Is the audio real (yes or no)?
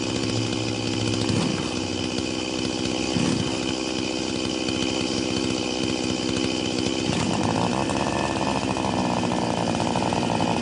yes